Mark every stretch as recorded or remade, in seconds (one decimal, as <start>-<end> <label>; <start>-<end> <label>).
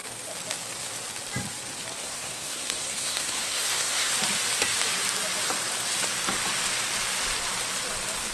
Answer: 0.0-2.0 recorded; 2.0-4.1 remade; 4.1-8.3 recorded